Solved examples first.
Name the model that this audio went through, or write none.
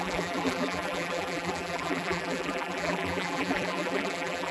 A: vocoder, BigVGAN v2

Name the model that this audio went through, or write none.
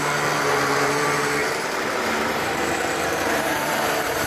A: vocoder, BigVGAN v2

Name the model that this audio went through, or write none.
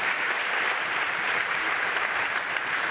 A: vocoder, BigVGAN v2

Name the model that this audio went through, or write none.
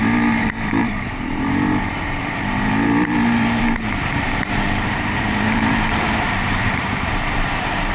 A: vocoder, BigVGAN v2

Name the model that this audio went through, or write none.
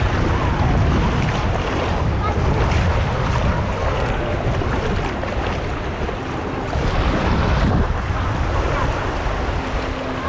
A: none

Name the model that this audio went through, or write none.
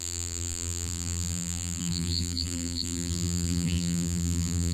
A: vocoder, BigVGAN v2